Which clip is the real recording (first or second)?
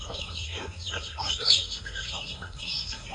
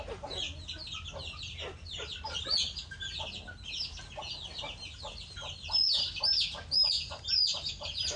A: second